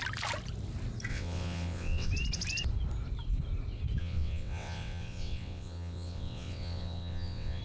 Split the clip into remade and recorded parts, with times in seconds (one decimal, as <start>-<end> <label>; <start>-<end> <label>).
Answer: 0.0-1.1 recorded; 1.1-2.1 remade; 2.1-4.0 recorded; 4.0-7.6 remade